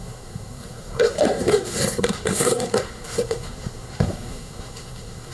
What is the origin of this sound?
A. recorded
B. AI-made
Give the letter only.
B